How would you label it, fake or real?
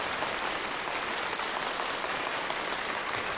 real